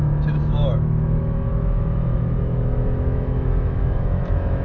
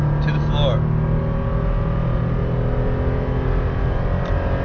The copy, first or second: first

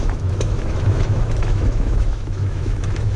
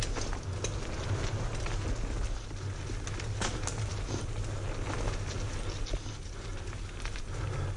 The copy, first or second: first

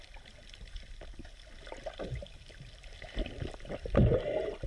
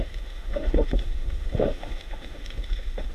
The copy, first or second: second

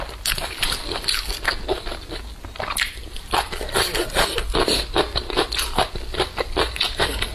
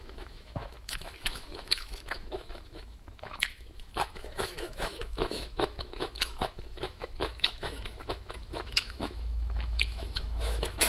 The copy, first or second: second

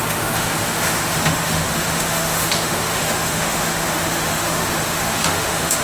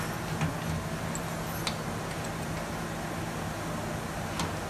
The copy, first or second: first